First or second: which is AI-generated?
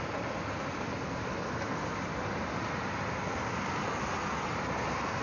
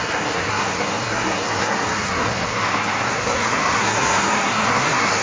second